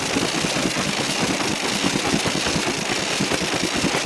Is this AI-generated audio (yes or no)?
no